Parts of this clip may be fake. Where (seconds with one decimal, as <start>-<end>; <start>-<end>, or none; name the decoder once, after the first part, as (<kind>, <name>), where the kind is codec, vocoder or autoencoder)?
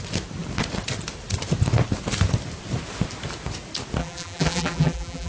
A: 4.0-5.3 (vocoder, BigVGAN v2)